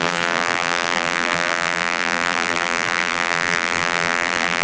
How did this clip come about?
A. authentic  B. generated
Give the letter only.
B